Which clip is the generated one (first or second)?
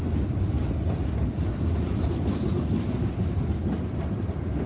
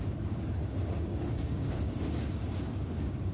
second